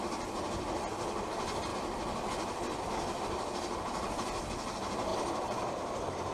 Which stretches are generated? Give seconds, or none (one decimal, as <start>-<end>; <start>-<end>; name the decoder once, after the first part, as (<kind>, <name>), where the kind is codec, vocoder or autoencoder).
5.1-5.7 (vocoder, BigVGAN v2)